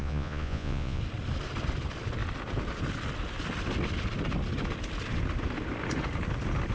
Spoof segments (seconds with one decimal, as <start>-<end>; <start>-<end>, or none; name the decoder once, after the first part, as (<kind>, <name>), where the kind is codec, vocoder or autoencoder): 0.0-1.0 (vocoder, Vocos)